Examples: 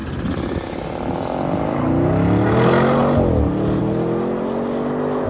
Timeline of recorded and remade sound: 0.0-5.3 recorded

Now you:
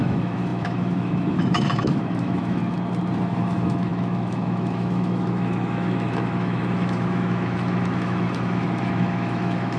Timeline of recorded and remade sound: 0.0-2.6 remade; 2.6-3.2 recorded; 3.2-9.8 remade